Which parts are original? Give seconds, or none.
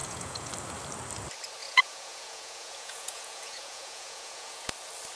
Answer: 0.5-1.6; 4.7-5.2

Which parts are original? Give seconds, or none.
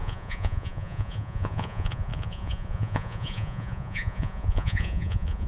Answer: none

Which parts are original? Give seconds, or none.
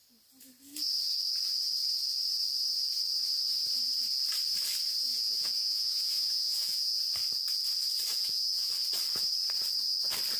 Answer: 0.0-5.1; 7.0-8.1; 8.7-10.4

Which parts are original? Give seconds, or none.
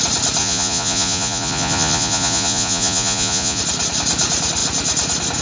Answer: 0.0-0.4; 3.6-5.4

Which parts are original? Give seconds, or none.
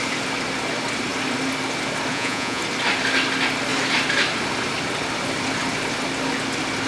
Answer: 0.0-2.1; 2.6-6.9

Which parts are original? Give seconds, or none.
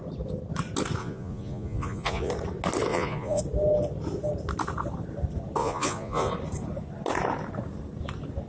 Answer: 0.0-1.0; 2.3-2.9; 3.4-5.6; 6.3-8.5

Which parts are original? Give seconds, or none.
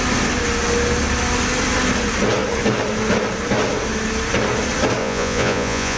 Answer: 0.0-5.0